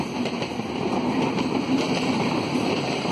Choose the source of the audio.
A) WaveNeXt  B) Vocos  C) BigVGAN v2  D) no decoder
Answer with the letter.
C